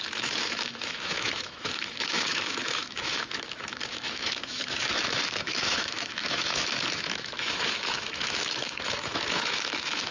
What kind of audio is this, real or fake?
fake